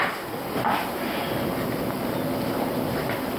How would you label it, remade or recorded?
remade